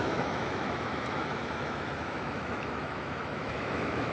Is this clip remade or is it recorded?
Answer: remade